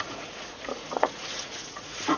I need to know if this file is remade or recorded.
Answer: remade